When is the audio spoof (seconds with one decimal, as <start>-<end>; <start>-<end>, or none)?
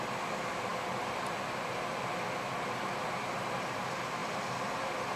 none